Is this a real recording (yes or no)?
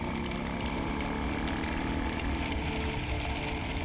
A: yes